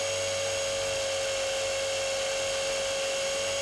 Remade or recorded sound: recorded